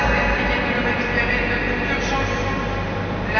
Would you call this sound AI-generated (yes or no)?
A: no